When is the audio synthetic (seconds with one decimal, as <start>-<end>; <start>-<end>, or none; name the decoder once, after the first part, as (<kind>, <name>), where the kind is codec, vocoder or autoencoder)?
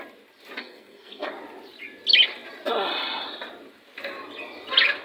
0.6-1.3 (codec, SNAC)